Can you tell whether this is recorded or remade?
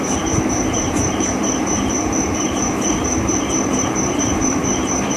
remade